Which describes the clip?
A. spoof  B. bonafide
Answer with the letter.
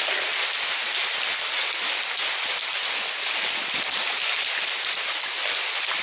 B